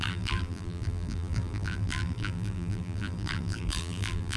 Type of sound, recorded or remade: remade